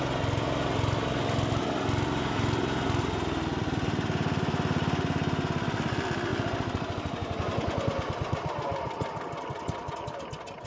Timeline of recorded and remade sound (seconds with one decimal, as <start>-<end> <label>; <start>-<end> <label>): 0.0-10.7 recorded